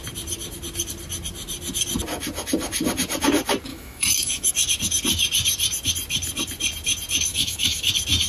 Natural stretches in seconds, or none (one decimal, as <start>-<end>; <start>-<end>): 0.0-3.7; 4.5-7.3; 7.9-8.3